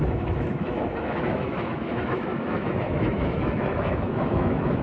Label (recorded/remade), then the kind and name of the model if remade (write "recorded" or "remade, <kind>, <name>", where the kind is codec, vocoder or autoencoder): remade, autoencoder, DAC-VAE